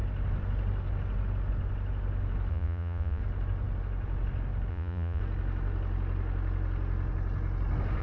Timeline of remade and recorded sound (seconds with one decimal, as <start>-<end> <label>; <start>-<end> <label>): 0.0-2.5 recorded; 2.5-3.2 remade; 3.2-4.7 recorded; 4.7-5.2 remade; 5.2-8.0 recorded